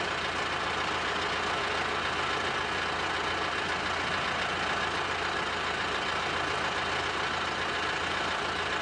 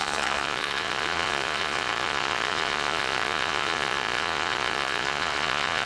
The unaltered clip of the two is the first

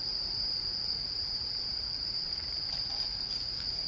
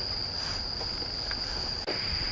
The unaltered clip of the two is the second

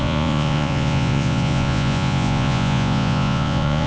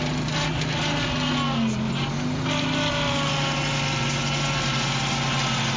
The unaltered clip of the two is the second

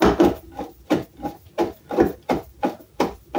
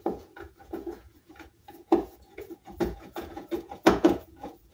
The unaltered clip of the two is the first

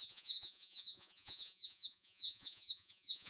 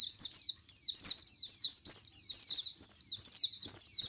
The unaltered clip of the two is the second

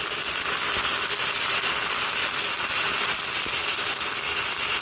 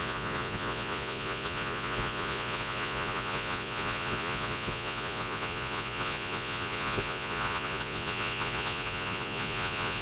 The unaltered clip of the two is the first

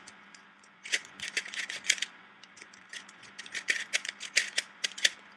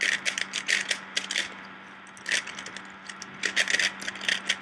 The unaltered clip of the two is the second